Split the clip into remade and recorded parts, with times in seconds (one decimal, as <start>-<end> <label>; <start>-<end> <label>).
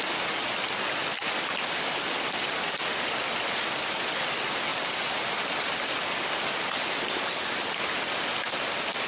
0.0-9.1 recorded